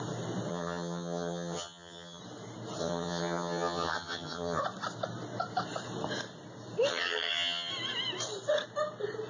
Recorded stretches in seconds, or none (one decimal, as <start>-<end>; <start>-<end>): 0.0-0.5; 2.2-2.8; 4.6-6.9; 7.7-9.3